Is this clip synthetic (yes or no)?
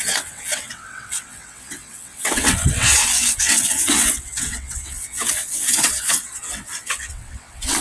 yes